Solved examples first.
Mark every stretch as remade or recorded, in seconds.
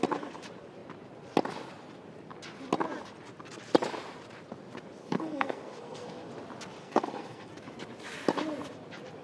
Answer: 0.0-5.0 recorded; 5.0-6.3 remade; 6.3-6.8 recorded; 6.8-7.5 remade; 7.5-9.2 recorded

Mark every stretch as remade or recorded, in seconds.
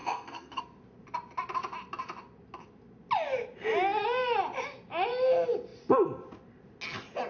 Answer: 0.0-0.6 remade; 0.6-7.3 recorded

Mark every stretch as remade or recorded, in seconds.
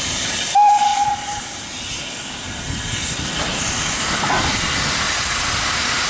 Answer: 0.0-6.1 recorded